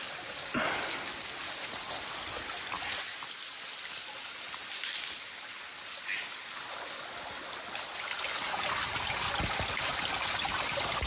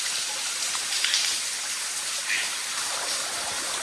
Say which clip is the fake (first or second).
second